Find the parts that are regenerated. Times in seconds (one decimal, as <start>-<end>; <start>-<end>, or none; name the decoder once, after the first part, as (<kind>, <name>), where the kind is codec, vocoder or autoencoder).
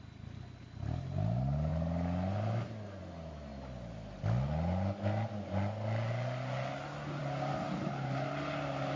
none